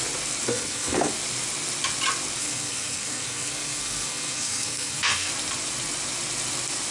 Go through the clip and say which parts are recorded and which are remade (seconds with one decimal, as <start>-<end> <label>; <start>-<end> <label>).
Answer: 0.0-0.5 recorded; 0.5-1.1 remade; 1.1-2.4 recorded; 2.4-5.3 remade; 5.3-6.9 recorded